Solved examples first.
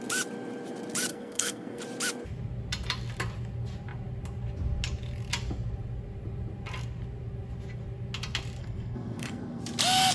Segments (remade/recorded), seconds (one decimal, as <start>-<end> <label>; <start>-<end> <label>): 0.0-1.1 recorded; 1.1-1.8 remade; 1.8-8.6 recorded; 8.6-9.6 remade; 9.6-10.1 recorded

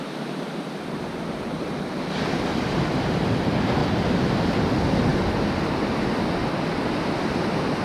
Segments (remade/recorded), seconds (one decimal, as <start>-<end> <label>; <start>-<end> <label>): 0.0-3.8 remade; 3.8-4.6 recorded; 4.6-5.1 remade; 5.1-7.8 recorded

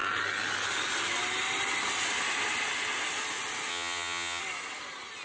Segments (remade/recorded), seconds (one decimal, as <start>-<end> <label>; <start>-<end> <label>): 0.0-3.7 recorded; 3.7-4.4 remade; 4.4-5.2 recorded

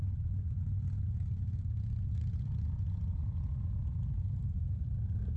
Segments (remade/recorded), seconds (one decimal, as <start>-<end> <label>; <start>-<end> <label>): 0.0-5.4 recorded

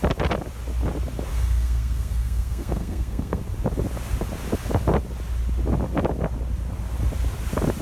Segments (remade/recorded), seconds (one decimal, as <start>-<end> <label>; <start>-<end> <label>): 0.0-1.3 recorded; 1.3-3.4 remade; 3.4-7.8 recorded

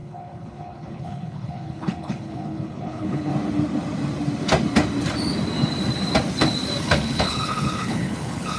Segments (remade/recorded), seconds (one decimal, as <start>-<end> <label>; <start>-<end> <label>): 0.0-3.3 remade; 3.3-6.8 recorded; 6.8-8.6 remade

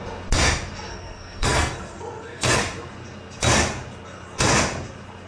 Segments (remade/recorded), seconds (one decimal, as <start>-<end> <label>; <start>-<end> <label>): 0.0-0.9 recorded; 0.9-2.6 remade; 2.6-5.3 recorded

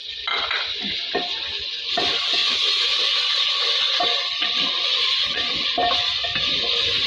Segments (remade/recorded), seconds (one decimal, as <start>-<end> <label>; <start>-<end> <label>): 0.0-2.4 recorded; 2.4-3.6 remade; 3.6-4.4 recorded; 4.4-5.7 remade; 5.7-7.1 recorded